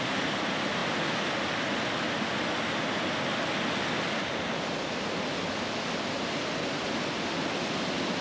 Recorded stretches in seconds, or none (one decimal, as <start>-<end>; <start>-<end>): 0.0-8.2